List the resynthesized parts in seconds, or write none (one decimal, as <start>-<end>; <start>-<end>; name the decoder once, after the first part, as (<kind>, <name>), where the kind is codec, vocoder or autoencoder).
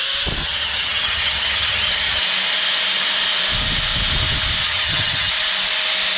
0.4-2.2 (vocoder, HiFi-GAN); 4.6-5.3